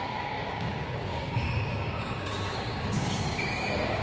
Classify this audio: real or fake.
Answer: fake